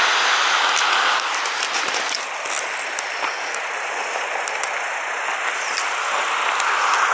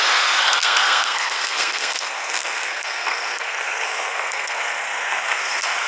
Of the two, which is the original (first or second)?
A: first